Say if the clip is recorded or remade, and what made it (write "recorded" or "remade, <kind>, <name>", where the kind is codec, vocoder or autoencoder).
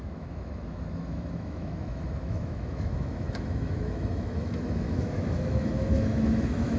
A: remade, autoencoder, DAC-VAE